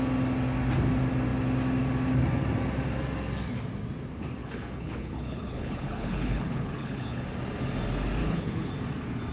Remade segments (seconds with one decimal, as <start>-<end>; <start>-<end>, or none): 4.4-7.2; 8.2-8.7